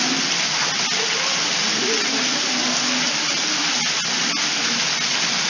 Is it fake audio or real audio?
real